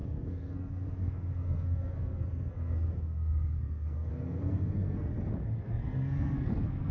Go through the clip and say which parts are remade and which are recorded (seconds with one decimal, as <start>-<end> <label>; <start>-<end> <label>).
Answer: 0.0-5.1 remade; 5.1-5.6 recorded; 5.6-6.9 remade